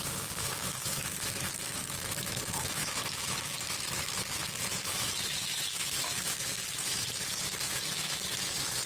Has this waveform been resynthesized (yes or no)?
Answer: yes